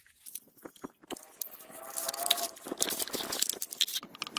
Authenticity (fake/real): real